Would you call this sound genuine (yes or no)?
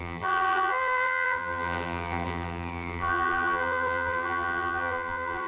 no